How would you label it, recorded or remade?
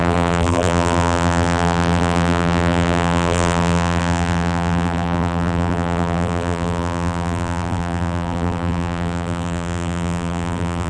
remade